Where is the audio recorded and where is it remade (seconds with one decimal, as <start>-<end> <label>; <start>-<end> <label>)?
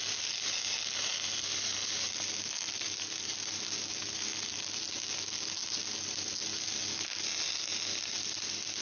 0.0-8.8 recorded